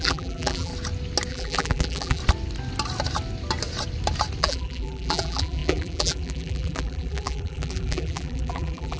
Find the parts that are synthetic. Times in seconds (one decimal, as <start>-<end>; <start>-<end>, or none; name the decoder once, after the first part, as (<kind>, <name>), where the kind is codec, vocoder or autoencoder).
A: 0.0-0.7 (vocoder, BigVGAN v2); 1.3-2.2; 4.4-9.0